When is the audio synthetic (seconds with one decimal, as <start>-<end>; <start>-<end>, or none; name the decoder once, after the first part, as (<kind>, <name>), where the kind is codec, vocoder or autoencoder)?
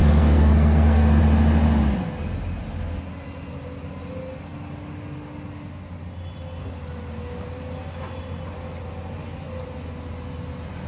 0.0-1.2 (codec, SNAC)